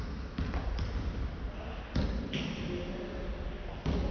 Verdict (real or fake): real